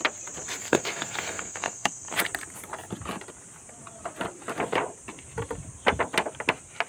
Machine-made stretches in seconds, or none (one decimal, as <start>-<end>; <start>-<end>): 0.6-2.1